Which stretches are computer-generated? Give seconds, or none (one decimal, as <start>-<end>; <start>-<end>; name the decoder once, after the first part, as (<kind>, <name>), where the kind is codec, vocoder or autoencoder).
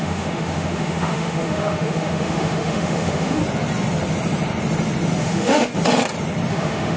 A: 0.0-3.4 (autoencoder, DAC-VAE); 5.2-5.7; 6.5-7.0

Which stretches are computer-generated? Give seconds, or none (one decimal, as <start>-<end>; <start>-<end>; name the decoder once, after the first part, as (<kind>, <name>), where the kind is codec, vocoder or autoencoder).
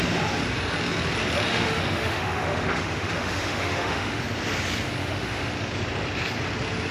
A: 1.5-4.2 (autoencoder, DAC-VAE); 5.0-5.5